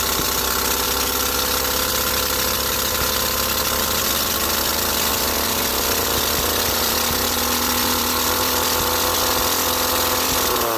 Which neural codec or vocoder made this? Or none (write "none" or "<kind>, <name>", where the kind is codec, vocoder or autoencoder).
none